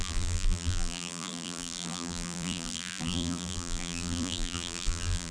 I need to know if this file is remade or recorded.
remade